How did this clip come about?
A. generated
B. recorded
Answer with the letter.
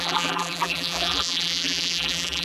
A